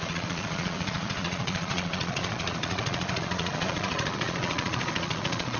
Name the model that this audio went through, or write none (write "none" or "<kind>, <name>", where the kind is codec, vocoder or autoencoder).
vocoder, Vocos